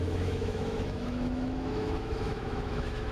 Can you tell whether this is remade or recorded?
remade